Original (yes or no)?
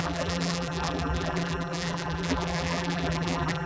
no